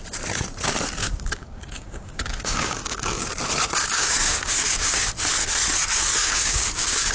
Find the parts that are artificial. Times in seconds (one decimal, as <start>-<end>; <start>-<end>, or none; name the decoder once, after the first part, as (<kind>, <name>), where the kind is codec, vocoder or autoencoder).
1.0-3.3 (codec, DAC); 3.8-5.1; 6.2-7.1